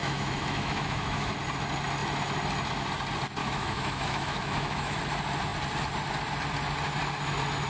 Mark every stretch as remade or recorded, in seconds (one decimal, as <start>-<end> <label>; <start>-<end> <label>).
0.0-1.3 remade; 1.3-3.4 recorded; 3.4-5.0 remade; 5.0-7.7 recorded